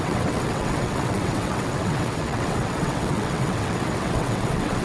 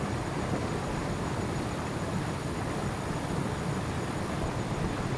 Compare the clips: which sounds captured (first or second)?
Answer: second